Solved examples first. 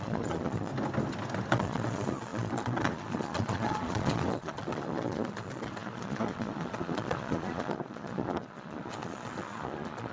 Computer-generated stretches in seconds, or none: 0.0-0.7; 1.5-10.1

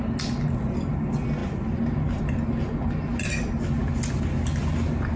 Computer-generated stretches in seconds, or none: none

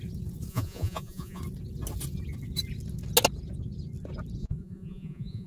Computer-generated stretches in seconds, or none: 0.5-1.4; 4.4-5.5

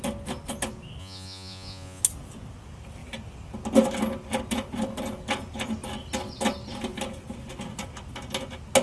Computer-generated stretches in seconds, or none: 1.0-2.0

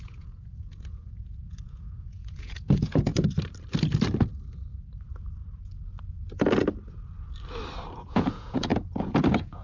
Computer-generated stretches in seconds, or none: 0.0-3.1; 8.0-9.6

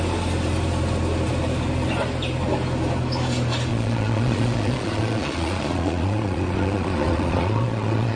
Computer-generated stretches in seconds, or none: 3.7-8.2

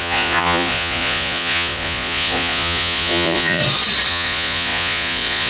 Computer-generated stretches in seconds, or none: 0.0-3.6; 4.1-5.5